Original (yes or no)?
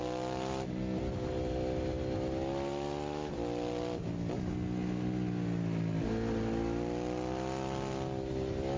yes